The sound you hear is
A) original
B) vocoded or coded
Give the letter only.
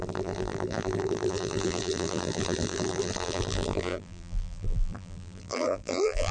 B